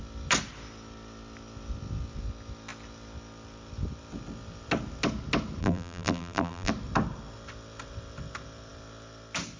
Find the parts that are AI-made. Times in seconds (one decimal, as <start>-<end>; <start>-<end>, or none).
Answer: 5.6-6.7